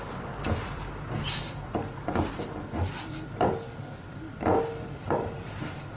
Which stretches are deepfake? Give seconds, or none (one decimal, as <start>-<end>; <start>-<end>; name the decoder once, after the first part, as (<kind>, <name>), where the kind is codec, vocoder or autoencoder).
0.0-6.0 (vocoder, BigVGAN v2)